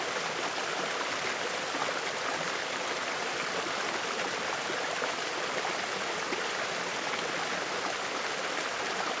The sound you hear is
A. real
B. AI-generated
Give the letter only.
A